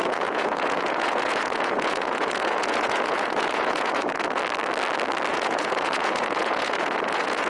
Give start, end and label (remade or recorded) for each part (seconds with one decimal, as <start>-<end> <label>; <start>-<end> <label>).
0.0-4.4 remade; 4.4-5.3 recorded; 5.3-7.5 remade